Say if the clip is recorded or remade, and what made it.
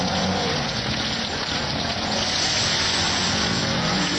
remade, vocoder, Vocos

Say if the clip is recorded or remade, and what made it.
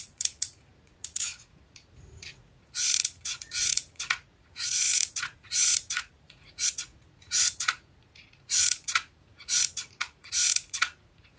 remade, vocoder, Vocos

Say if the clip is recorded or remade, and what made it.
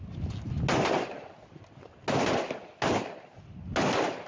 recorded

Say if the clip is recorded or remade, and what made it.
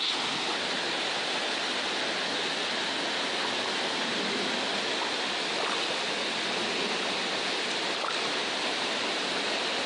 recorded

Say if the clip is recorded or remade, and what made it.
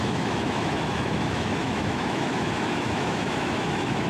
remade, autoencoder, DAC-VAE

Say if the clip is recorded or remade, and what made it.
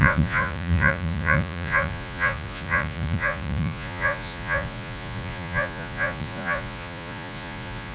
remade, vocoder, Vocos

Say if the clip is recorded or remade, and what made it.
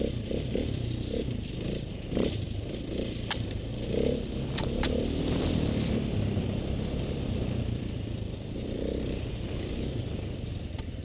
remade, vocoder, BigVGAN v2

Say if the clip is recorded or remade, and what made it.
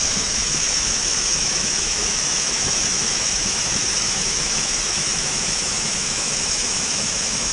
remade, autoencoder, DAC-VAE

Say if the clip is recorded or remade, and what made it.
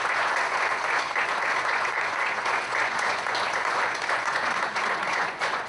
remade, vocoder, Vocos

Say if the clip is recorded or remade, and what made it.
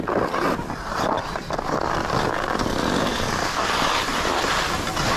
recorded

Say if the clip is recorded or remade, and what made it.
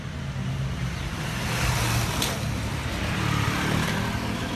recorded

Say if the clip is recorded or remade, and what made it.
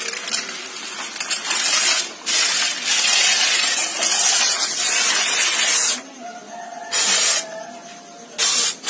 recorded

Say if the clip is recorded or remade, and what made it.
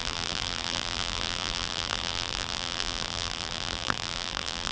remade, vocoder, BigVGAN v2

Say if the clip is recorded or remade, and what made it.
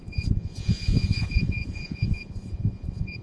remade, vocoder, Vocos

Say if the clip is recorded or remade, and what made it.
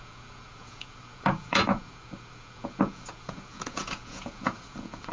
remade, vocoder, Vocos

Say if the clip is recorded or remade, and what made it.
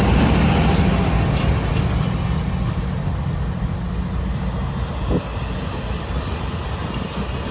recorded